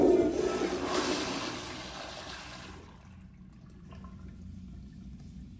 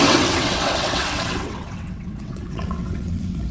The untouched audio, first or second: first